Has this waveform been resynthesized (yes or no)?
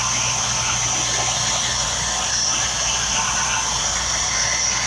no